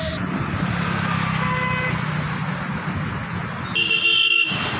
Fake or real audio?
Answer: real